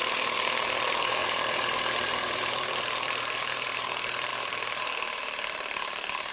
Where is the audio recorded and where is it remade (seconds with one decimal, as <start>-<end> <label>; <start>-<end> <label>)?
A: 0.0-6.3 remade